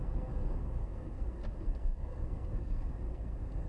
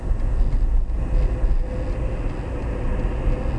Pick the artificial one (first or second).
first